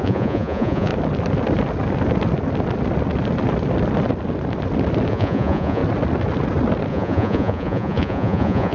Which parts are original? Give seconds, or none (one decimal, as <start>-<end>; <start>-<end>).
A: 0.9-5.1; 5.8-6.9